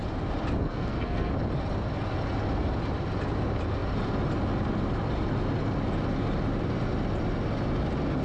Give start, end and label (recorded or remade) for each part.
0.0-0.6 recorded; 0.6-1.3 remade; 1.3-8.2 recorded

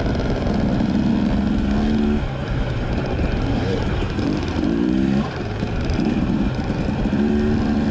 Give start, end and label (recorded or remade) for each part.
0.0-2.4 recorded; 2.4-7.0 remade; 7.0-7.9 recorded

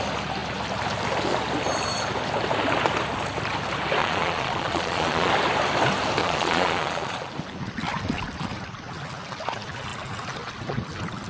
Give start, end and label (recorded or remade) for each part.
0.0-4.0 recorded; 4.0-5.3 remade; 5.3-6.2 recorded; 6.2-7.3 remade; 7.3-11.3 recorded